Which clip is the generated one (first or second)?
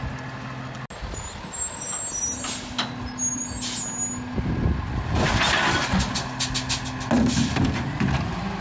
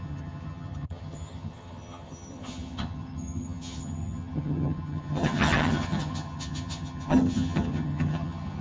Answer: second